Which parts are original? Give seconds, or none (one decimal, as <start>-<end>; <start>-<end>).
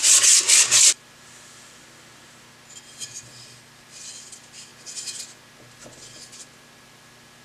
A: 0.0-7.4